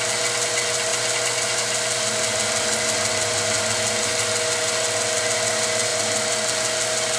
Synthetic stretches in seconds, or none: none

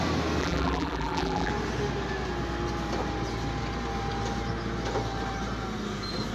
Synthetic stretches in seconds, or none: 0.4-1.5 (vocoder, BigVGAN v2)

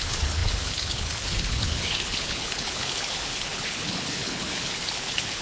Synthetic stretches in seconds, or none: 0.0-5.4 (codec, HILCodec)

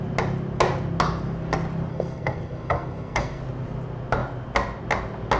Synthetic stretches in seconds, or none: 1.9-3.4 (codec, SNAC)

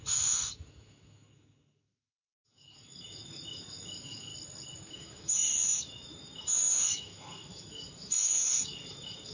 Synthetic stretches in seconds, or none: 0.0-4.3 (autoencoder, DAC-VAE); 4.9-9.3

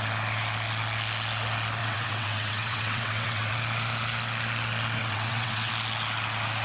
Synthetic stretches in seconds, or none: 1.8-3.5 (vocoder, WaveNeXt); 5.0-5.7